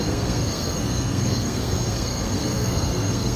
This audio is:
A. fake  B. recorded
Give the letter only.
A